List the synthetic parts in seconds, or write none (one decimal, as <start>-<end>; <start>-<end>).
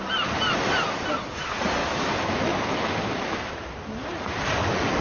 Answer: 1.8-3.5